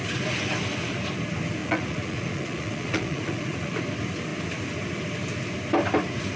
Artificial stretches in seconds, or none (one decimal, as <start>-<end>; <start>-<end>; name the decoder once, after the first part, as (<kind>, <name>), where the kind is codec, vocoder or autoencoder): 1.6-3.8 (vocoder, Vocos)